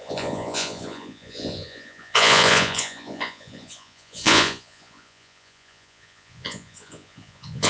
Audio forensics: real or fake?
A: fake